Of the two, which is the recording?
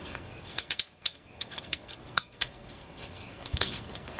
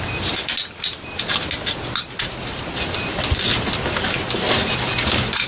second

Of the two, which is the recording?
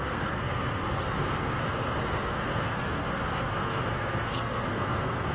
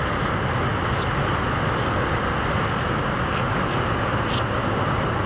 second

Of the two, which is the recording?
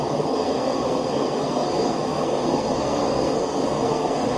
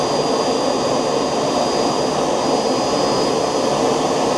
second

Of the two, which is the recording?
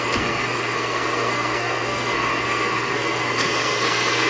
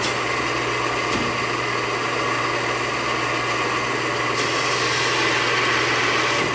second